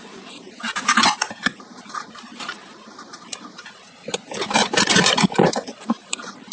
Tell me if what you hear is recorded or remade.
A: remade